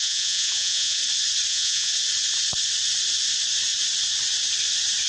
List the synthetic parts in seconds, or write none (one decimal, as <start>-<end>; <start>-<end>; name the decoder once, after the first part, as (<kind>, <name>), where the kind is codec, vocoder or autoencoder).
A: 0.0-1.0 (vocoder, Vocos); 1.5-1.9